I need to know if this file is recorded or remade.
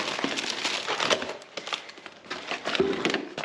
recorded